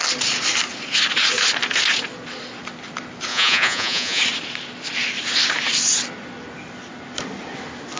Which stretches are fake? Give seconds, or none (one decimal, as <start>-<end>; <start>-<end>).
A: 3.3-4.2